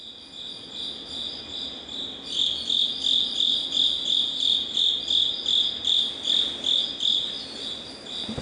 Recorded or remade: recorded